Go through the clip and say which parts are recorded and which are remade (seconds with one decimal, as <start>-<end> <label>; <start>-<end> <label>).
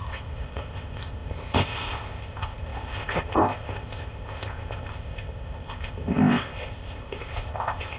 0.0-8.0 remade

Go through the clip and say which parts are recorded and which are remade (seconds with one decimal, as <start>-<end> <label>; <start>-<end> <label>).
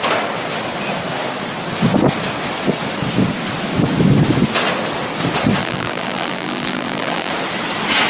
0.0-5.6 recorded; 5.6-7.3 remade; 7.3-8.1 recorded